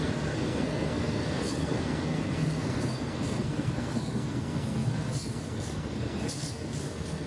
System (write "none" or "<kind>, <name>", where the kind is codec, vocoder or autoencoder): codec, SNAC